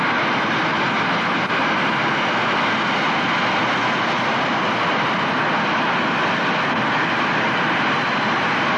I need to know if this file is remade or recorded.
recorded